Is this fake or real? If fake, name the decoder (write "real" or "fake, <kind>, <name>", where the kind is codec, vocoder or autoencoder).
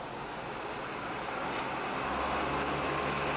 real